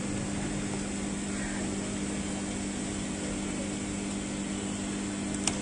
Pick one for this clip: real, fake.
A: real